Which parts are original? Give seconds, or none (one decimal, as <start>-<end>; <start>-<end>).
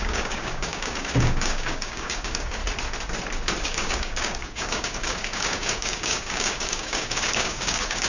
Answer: 2.6-3.6